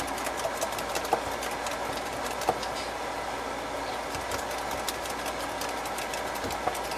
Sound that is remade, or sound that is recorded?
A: recorded